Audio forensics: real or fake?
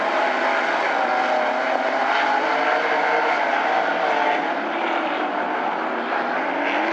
real